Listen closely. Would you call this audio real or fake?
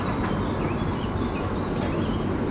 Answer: real